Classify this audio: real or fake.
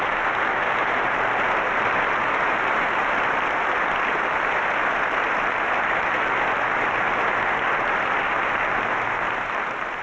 real